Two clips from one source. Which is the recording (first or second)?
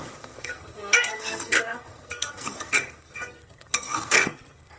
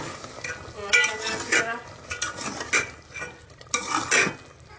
second